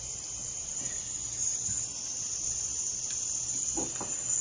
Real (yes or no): yes